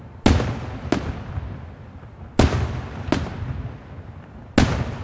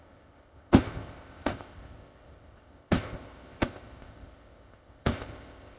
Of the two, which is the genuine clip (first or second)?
first